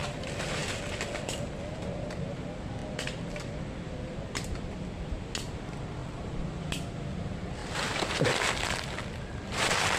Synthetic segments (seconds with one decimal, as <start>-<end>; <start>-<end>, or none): 0.0-2.1; 2.8-4.2; 6.0-6.6

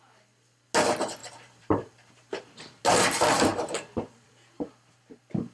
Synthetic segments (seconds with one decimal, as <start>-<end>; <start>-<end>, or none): 1.2-2.8; 3.5-4.3

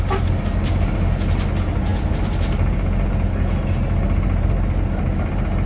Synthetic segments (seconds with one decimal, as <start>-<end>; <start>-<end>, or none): none

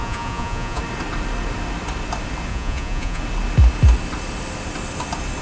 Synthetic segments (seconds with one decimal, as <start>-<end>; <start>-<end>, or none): 0.0-0.8; 2.5-3.2

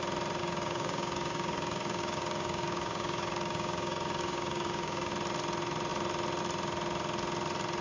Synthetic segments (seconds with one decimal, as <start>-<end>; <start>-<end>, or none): 0.4-5.1

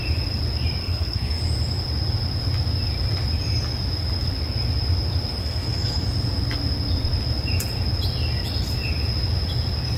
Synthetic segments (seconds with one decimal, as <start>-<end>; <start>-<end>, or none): 0.8-1.4; 5.4-6.0

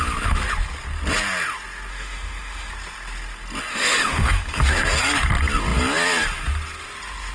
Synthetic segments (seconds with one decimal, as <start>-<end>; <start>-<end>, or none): 1.9-2.7; 3.7-4.7